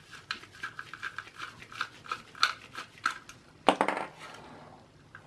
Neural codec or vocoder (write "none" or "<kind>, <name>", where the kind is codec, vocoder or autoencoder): none